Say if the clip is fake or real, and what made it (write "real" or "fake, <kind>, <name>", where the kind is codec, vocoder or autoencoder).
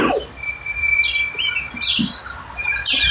real